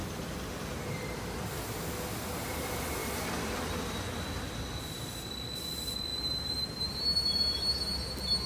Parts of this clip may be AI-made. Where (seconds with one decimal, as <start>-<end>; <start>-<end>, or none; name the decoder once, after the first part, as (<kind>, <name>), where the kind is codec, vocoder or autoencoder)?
6.1-7.2 (vocoder, BigVGAN v2)